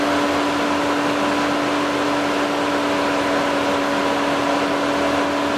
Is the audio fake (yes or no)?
no